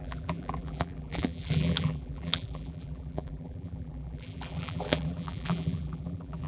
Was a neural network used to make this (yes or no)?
yes